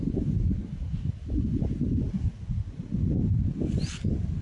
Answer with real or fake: real